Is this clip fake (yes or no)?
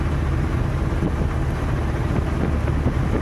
no